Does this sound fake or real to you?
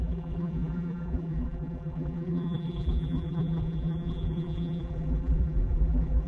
fake